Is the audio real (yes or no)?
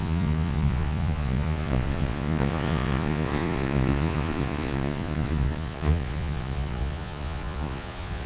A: no